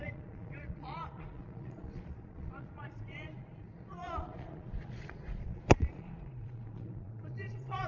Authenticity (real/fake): fake